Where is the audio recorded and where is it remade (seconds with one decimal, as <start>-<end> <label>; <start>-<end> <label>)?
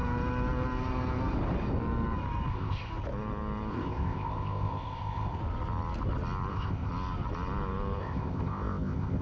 0.0-2.5 recorded; 2.5-2.9 remade; 2.9-3.7 recorded; 3.7-5.4 remade; 5.4-6.5 recorded; 6.5-6.9 remade; 6.9-8.0 recorded; 8.0-9.2 remade